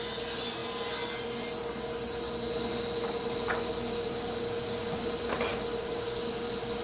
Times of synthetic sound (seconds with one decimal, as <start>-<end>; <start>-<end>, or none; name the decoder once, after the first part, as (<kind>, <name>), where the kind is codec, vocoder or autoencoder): 3.5-5.0 (codec, DAC); 5.5-6.2